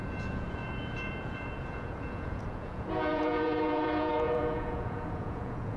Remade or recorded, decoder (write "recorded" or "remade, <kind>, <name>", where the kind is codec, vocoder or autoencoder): remade, vocoder, Vocos